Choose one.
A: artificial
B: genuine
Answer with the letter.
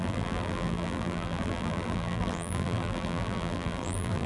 A